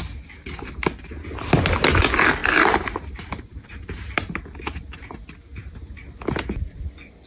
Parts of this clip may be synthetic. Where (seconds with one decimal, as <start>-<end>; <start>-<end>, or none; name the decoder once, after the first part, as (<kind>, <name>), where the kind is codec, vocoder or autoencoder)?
2.4-4.3 (vocoder, BigVGAN v2)